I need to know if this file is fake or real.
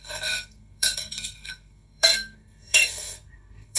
fake